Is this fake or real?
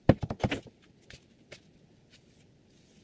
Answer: real